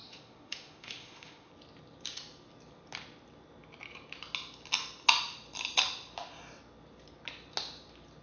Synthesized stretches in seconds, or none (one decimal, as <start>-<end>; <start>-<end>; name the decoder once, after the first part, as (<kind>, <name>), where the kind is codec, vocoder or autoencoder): 0.0-1.5 (autoencoder, DAC-VAE)